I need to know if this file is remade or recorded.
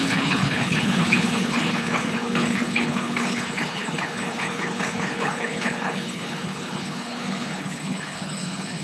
remade